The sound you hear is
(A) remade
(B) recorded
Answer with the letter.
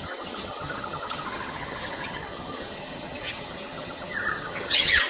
A